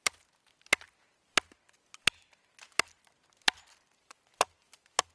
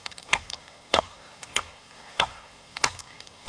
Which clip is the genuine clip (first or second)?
first